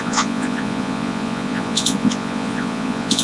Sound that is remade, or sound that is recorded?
remade